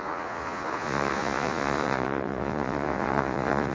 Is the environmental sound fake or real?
fake